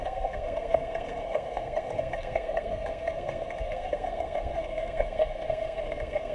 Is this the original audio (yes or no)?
no